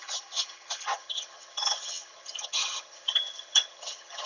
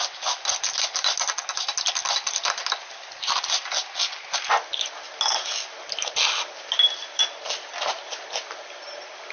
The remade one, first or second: first